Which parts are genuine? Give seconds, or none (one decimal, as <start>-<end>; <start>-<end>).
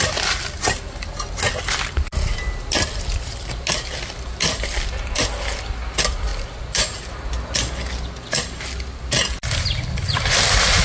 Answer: 0.0-10.8